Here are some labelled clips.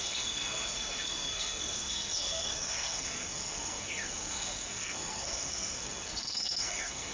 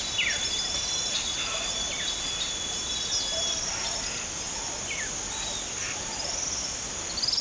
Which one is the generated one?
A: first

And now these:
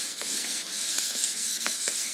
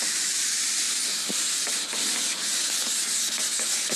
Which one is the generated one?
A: first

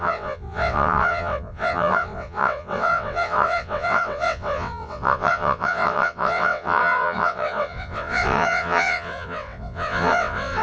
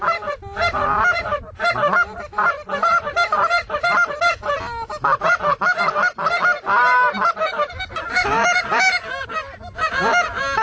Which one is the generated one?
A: first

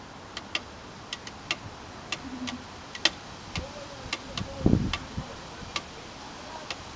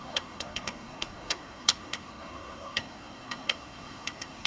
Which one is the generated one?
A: second